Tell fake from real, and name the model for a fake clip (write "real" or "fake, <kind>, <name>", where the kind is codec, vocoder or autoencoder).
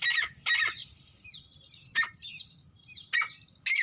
real